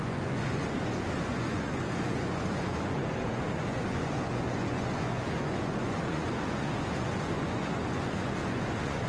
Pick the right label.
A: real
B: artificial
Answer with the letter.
B